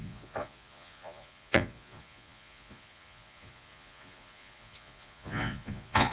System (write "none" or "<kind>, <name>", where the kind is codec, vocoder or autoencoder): vocoder, Vocos